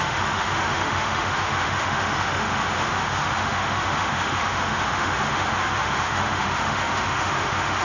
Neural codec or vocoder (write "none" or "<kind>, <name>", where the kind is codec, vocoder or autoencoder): autoencoder, DAC-VAE